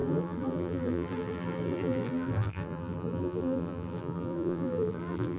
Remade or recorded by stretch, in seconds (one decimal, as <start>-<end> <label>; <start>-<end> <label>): 0.0-5.4 remade